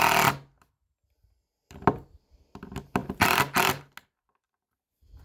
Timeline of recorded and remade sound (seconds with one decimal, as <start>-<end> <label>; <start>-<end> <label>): 0.0-5.2 recorded